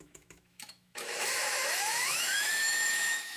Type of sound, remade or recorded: remade